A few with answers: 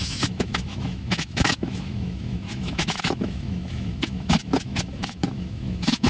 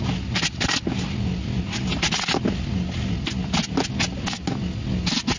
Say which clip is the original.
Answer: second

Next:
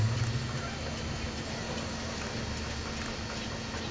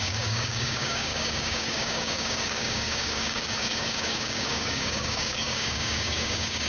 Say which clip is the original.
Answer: first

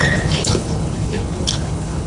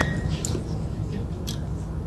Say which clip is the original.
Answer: second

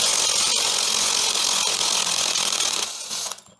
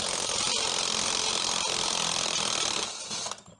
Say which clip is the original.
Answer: second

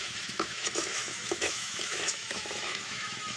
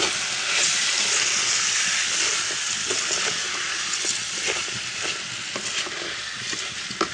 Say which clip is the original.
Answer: second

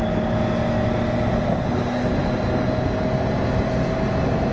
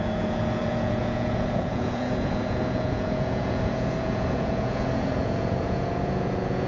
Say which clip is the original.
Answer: first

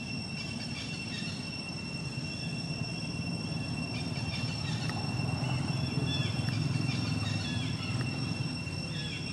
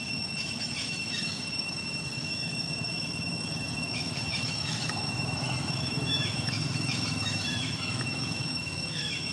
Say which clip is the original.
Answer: first